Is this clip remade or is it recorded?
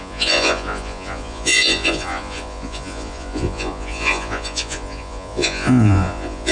remade